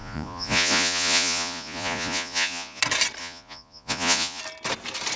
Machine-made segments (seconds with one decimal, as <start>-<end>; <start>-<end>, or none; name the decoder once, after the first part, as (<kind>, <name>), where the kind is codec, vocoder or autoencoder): 0.0-2.8 (vocoder, Vocos); 3.2-4.4